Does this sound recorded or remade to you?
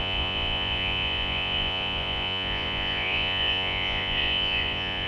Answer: remade